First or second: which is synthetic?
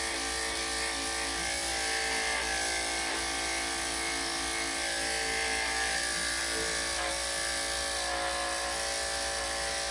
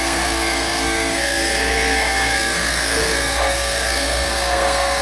second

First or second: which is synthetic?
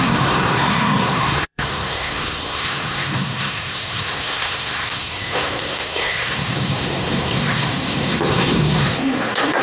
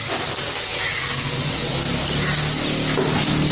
first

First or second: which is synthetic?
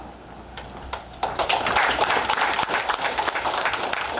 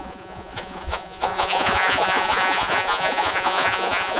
second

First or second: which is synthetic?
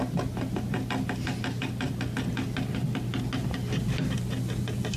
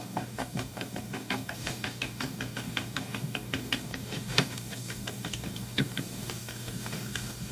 second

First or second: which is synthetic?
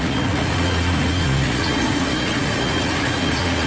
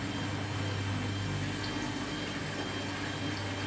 first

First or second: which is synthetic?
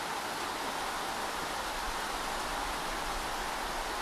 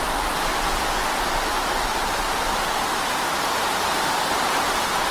second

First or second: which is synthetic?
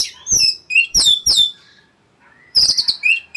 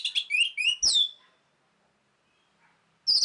first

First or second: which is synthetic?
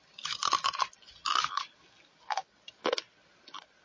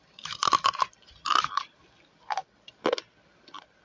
second